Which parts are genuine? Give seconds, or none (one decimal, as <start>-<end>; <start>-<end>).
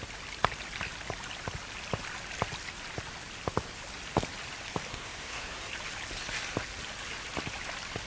0.0-4.9; 5.7-8.1